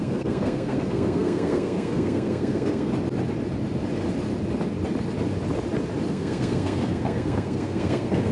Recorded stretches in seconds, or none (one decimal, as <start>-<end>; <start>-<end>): 2.9-6.1